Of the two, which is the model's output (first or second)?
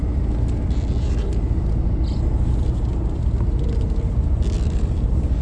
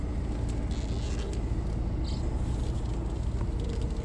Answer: first